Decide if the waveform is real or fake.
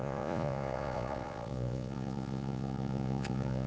fake